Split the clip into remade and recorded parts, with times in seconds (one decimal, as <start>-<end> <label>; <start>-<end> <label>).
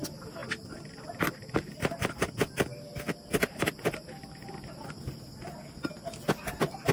0.0-6.9 recorded